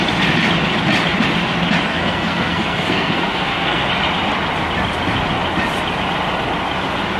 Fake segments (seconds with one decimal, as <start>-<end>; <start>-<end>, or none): 1.9-3.9

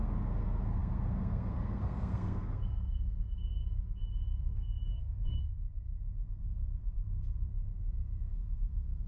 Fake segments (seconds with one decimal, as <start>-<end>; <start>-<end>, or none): 0.0-7.5; 8.2-9.1

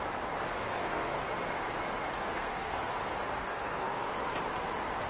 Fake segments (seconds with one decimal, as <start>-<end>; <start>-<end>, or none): 0.6-1.2; 2.2-2.8; 3.4-4.1

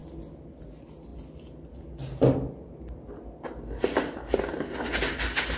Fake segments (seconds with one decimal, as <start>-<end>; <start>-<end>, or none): none